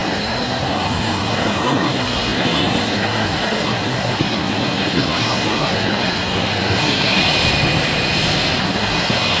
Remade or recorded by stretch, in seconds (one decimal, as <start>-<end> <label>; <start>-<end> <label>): 0.0-7.2 remade; 7.2-8.6 recorded; 8.6-9.4 remade